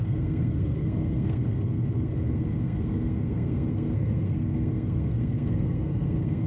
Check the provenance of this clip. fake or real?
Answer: fake